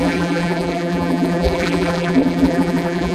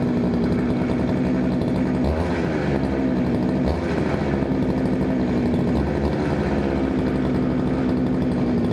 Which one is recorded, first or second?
second